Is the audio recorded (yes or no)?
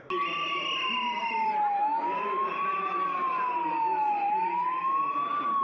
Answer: yes